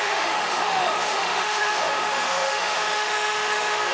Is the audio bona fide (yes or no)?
no